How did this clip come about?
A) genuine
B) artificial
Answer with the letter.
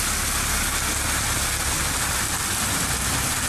A